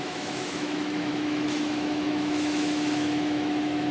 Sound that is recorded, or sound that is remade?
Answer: remade